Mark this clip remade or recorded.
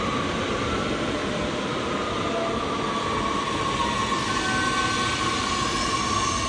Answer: recorded